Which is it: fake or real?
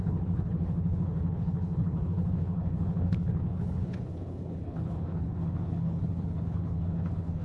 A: fake